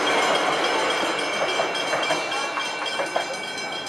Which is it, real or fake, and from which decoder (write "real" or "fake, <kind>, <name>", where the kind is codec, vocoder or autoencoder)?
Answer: real